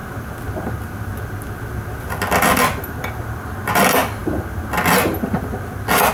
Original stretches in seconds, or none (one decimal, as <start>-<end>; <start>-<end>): 0.0-6.1